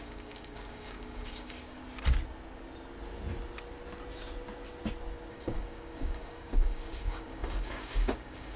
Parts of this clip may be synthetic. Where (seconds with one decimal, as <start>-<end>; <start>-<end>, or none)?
0.0-1.8; 5.3-8.6

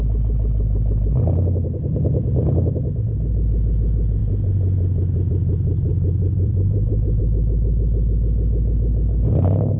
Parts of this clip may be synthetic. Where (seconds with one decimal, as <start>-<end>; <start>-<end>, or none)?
1.9-2.7; 5.9-7.2

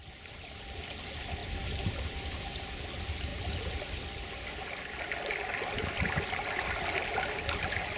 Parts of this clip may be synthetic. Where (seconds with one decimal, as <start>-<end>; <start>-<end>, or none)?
1.4-2.6

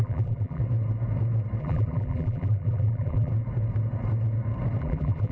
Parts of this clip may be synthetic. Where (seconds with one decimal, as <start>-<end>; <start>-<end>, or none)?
0.0-0.6; 1.6-3.3; 4.8-5.3

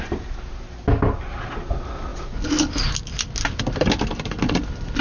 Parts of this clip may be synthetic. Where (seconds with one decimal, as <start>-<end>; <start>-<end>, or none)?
none

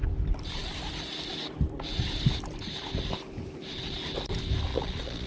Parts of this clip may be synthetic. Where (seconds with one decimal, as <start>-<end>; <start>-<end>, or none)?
4.7-5.3